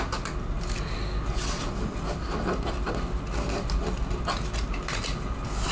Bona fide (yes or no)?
yes